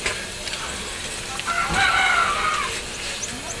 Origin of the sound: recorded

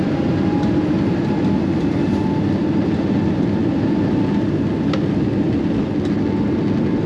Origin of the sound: recorded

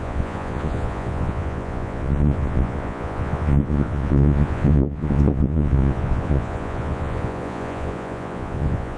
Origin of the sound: remade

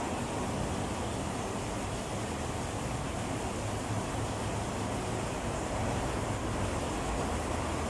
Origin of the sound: recorded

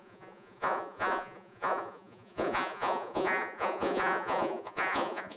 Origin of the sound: remade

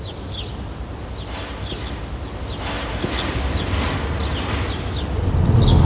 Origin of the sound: recorded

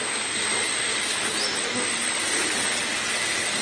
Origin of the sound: recorded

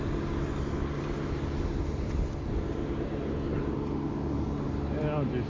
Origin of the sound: recorded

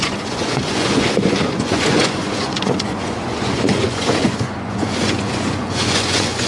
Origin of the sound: remade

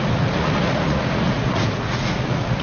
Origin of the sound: remade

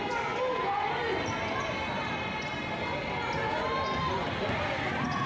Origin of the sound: recorded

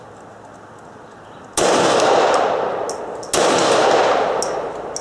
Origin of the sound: recorded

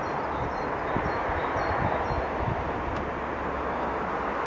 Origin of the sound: recorded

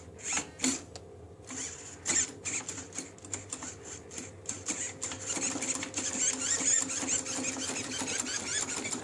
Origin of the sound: recorded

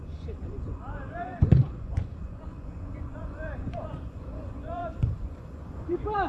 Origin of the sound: remade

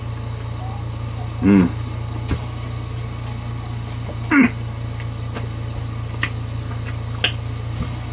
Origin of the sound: recorded